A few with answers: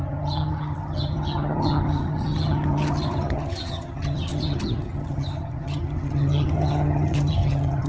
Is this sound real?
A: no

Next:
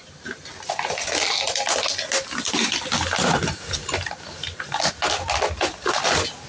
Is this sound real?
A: yes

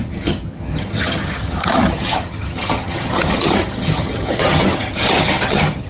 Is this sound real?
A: no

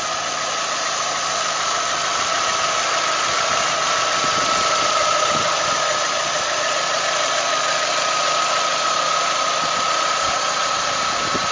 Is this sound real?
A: yes